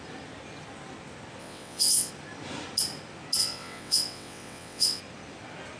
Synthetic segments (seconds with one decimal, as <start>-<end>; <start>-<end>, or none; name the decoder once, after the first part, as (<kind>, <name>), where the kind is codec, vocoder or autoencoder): 1.4-2.1 (vocoder, WaveNeXt); 3.4-5.0